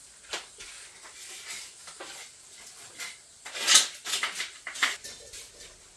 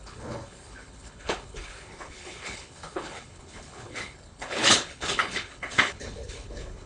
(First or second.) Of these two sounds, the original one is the first